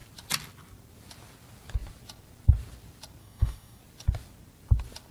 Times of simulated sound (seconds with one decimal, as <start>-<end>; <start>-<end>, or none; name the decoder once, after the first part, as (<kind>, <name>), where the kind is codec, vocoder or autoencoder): 3.2-3.8 (codec, DAC)

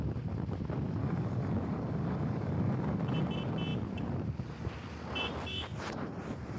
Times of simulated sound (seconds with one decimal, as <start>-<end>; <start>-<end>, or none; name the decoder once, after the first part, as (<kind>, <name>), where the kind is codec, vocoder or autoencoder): 1.0-3.0 (codec, DAC)